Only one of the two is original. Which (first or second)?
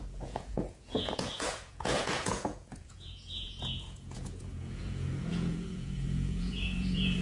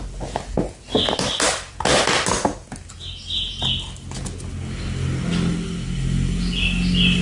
second